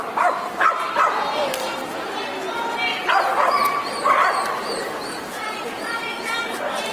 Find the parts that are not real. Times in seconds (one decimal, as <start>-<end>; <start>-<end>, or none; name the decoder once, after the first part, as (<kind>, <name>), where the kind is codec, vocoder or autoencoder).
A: 1.5-2.1 (vocoder, BigVGAN v2); 3.6-6.0